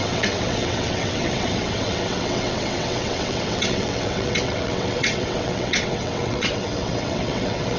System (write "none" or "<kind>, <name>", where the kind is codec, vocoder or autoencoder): vocoder, WaveNeXt